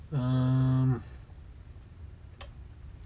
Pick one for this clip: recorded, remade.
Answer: recorded